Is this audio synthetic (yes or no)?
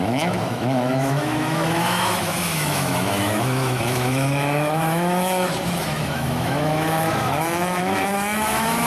yes